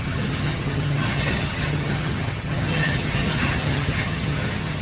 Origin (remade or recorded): remade